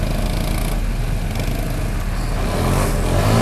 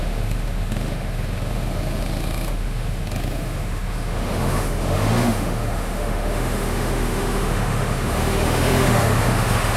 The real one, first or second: first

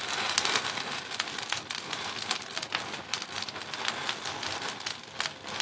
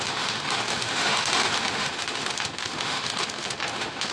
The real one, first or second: first